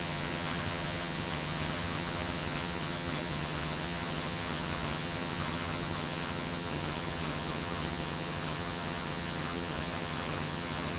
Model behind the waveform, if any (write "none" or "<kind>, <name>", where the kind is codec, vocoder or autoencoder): vocoder, HiFi-GAN